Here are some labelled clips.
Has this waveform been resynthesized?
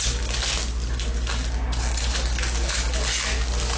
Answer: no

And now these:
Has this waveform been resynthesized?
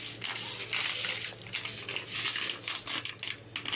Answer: no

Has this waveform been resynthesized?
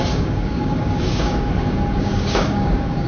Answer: yes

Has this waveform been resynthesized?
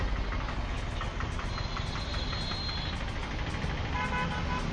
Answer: no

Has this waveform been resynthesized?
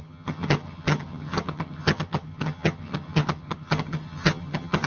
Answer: yes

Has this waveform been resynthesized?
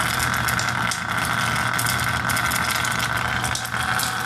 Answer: no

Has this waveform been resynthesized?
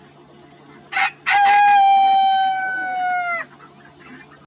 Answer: no